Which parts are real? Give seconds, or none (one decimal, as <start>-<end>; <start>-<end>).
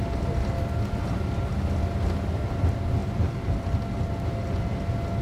0.0-3.0; 3.6-5.2